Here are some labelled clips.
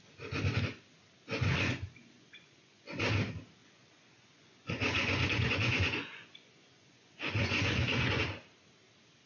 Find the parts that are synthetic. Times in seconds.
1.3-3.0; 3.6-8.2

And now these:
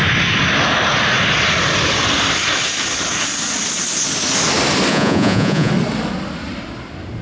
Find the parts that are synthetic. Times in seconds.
4.9-5.7